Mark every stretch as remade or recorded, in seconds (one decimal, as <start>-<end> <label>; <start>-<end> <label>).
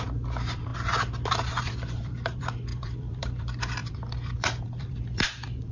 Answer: 0.0-0.7 remade; 0.7-1.6 recorded; 1.6-5.7 remade